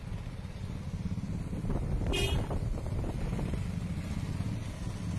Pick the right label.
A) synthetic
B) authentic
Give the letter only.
B